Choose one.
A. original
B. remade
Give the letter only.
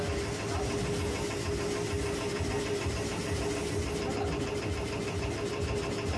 A